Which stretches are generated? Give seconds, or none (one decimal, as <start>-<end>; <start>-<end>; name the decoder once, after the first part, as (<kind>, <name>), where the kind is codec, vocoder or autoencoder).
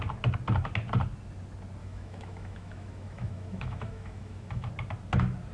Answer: 1.8-4.7 (autoencoder, DAC-VAE)